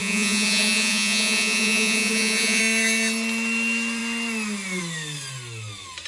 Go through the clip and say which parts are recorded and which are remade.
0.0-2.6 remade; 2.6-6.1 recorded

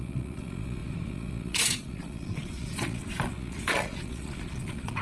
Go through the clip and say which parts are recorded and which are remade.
0.0-5.0 remade

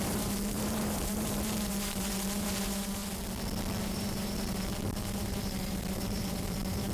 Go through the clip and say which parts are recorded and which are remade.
0.0-3.0 remade; 3.0-3.8 recorded; 3.8-6.9 remade

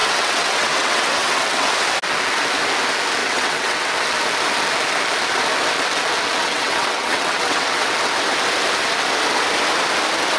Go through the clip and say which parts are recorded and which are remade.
0.0-1.7 remade; 1.7-3.2 recorded; 3.2-3.9 remade; 3.9-6.4 recorded; 6.4-7.9 remade; 7.9-10.4 recorded